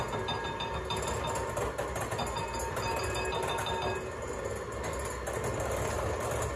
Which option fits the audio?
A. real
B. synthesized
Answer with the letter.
A